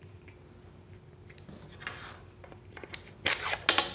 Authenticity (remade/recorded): recorded